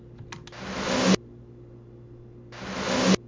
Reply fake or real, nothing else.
real